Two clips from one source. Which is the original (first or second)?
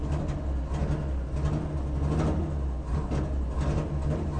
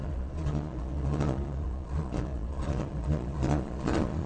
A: first